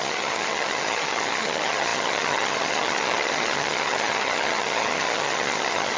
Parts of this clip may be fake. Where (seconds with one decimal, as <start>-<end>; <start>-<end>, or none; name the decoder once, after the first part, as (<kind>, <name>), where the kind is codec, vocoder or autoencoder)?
0.0-6.0 (vocoder, HiFi-GAN)